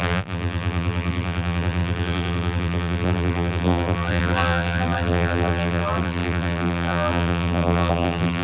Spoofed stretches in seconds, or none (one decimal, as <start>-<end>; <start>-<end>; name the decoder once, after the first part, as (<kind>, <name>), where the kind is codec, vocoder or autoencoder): 0.0-8.4 (vocoder, BigVGAN v2)